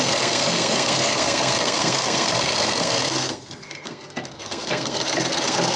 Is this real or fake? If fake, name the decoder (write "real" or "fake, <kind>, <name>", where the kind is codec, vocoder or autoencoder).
fake, codec, SNAC